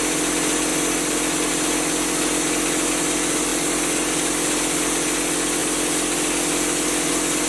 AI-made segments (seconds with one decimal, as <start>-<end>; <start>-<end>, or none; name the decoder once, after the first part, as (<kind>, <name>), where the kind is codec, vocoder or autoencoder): none